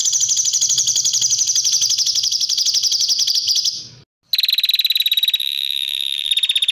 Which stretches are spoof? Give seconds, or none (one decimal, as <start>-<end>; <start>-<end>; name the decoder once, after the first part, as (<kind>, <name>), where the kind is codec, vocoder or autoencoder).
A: 5.4-6.3 (vocoder, BigVGAN v2)